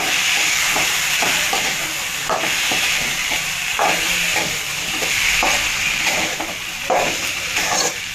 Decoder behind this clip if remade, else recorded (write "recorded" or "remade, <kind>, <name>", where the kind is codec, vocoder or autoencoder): remade, vocoder, BigVGAN v2